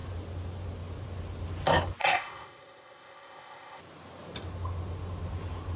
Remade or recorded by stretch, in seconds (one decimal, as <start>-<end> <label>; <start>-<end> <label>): 0.0-2.0 recorded; 2.0-3.8 remade; 3.8-5.8 recorded